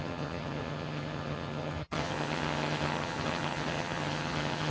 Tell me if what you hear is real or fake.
fake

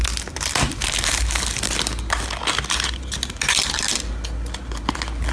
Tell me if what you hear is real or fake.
real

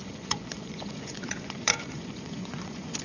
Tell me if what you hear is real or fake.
fake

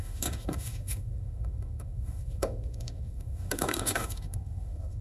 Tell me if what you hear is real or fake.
fake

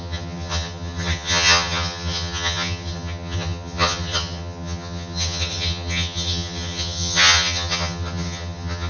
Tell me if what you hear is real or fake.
fake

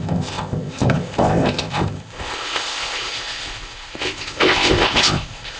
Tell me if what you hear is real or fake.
fake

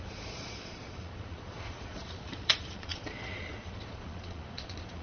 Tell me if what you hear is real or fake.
fake